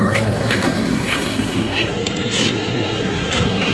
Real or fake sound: fake